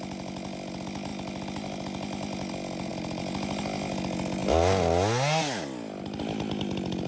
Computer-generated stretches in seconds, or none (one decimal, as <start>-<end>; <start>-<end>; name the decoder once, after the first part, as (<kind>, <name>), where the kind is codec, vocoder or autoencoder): none